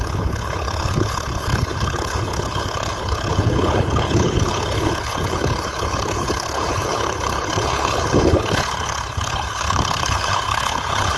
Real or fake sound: fake